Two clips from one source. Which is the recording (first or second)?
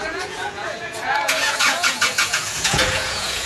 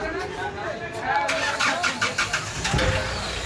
second